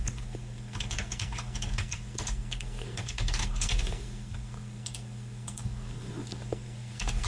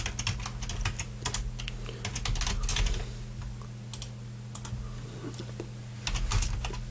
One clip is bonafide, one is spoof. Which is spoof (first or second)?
first